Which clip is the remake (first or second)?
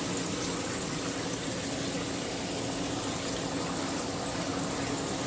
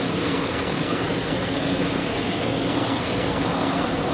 second